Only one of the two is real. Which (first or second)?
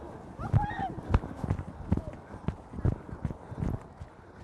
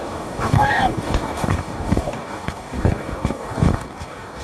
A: first